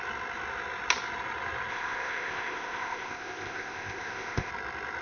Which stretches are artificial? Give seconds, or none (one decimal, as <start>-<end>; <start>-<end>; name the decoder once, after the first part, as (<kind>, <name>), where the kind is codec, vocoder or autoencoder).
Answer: 1.7-4.5 (codec, ZipCodec)